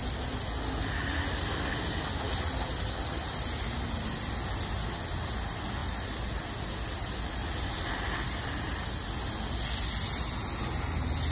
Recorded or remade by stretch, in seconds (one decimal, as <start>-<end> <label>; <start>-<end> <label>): 0.0-11.3 recorded